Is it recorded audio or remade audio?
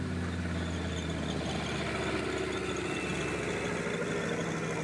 recorded